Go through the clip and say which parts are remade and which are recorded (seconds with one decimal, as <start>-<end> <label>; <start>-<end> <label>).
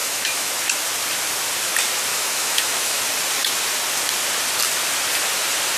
0.0-0.5 remade; 0.5-2.1 recorded; 2.1-3.0 remade; 3.0-5.8 recorded